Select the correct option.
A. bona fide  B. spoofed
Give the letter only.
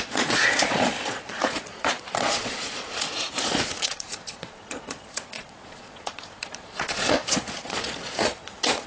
B